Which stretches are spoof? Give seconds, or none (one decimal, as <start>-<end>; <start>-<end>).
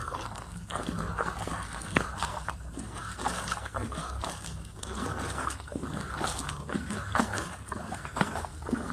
0.0-8.9